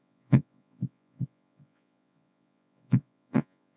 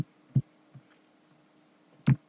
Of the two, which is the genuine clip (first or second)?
second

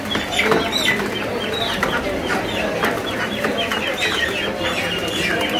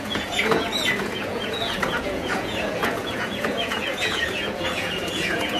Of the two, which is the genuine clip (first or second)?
first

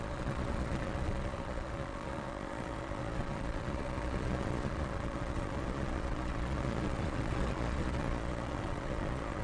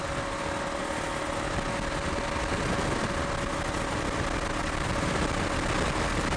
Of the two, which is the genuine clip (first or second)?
second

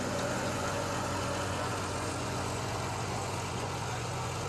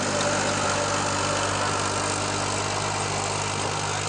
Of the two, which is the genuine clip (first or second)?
second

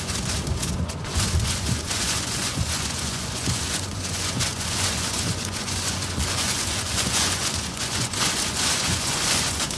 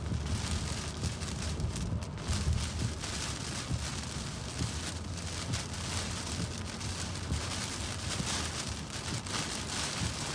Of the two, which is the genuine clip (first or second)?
second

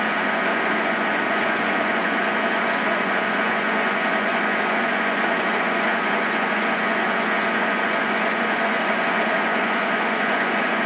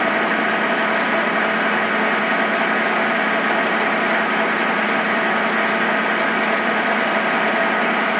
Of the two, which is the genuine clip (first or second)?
second